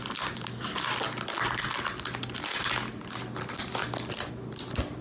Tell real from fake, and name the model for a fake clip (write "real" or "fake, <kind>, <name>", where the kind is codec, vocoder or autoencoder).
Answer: real